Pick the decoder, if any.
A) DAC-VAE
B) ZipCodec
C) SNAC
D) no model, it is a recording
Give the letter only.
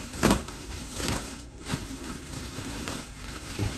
C